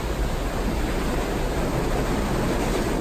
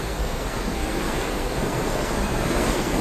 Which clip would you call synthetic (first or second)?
second